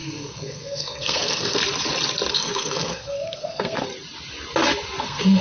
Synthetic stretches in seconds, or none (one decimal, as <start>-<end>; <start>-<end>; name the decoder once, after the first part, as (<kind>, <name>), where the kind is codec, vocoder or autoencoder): 0.0-1.6 (codec, SNAC); 2.3-3.9; 5.0-5.4